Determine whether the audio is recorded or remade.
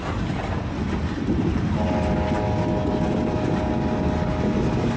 recorded